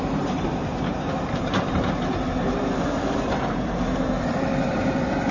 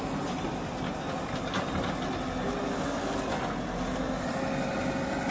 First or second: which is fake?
first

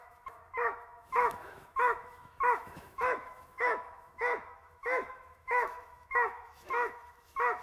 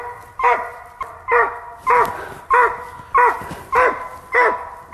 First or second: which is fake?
first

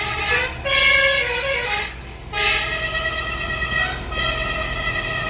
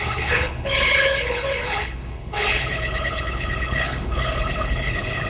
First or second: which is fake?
second